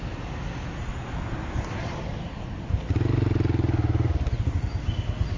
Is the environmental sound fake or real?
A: real